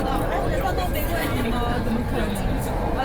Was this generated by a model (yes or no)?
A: no